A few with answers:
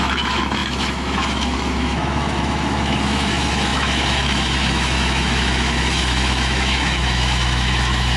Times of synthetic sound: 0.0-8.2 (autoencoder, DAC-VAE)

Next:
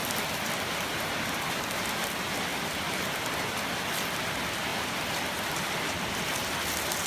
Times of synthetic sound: 0.0-1.0 (vocoder, BigVGAN v2); 2.5-3.8; 4.7-6.2

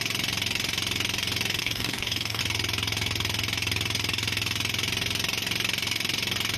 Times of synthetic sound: 1.6-2.4 (codec, DAC)

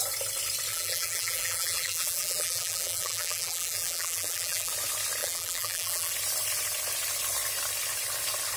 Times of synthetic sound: 0.7-4.7 (vocoder, BigVGAN v2); 5.2-6.1

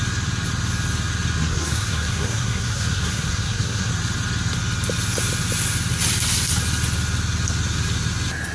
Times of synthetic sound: 1.4-3.9 (codec, SNAC)